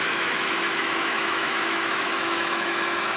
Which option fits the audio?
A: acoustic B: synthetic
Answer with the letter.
B